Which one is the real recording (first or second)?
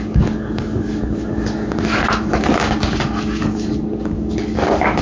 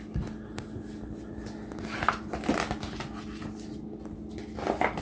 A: second